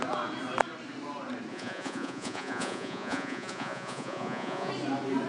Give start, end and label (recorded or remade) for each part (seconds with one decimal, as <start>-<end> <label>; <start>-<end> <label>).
0.0-1.5 recorded; 1.5-4.7 remade; 4.7-5.3 recorded